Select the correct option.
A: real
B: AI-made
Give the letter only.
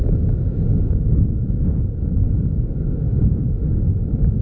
B